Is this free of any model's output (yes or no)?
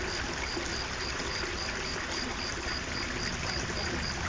yes